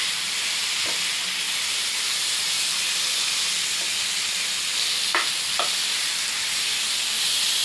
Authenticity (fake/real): real